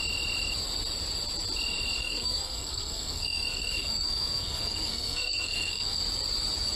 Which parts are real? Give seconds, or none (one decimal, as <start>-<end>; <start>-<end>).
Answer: 0.0-2.0; 6.0-6.8

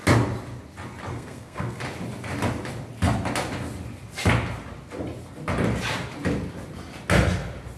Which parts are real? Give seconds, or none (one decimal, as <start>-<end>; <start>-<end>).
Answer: 0.0-1.1; 1.8-7.8

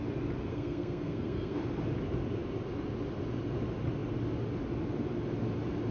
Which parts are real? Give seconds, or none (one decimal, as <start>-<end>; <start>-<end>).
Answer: 0.0-0.5; 1.6-5.9

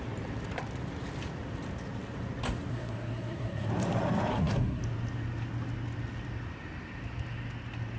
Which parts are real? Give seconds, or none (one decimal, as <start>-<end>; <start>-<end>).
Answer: 0.0-2.7; 3.7-4.3; 4.8-8.0